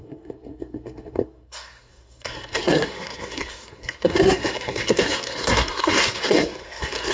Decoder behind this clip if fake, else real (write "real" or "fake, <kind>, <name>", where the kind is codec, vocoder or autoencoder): fake, codec, SNAC